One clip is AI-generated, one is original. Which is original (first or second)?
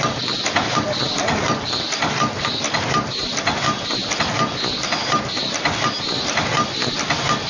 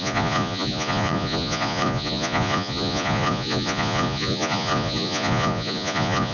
first